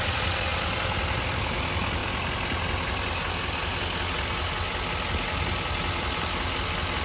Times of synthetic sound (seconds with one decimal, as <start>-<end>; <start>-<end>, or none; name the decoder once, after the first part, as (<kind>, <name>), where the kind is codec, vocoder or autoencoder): none